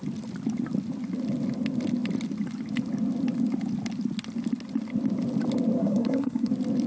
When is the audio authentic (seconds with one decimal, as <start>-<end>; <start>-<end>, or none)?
0.0-5.8; 6.5-6.9